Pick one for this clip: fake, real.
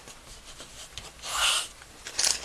real